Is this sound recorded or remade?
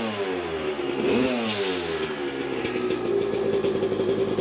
recorded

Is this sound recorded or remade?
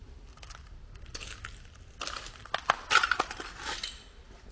recorded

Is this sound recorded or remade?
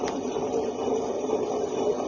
remade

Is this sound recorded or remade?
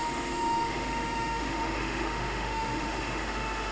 remade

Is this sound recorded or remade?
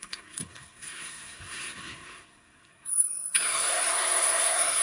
remade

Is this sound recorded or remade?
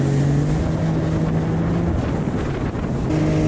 recorded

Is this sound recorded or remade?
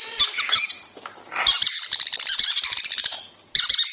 remade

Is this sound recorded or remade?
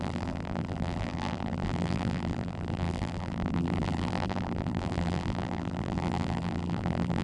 remade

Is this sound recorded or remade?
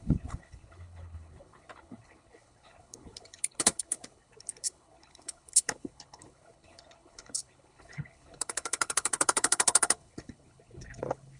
remade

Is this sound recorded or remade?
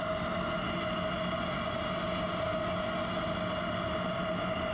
recorded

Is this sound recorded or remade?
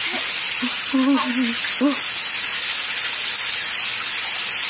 recorded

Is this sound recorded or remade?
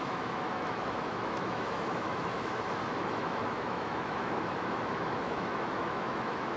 remade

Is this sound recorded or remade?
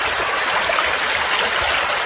recorded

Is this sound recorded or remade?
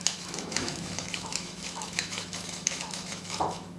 remade